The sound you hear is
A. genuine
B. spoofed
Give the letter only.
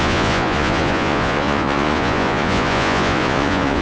B